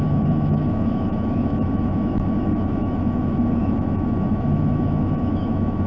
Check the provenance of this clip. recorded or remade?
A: remade